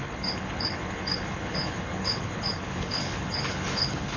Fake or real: fake